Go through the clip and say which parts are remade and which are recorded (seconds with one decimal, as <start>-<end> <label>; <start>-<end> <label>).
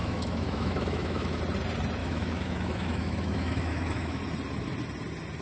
0.0-1.4 remade; 1.4-2.0 recorded; 2.0-4.2 remade; 4.2-5.4 recorded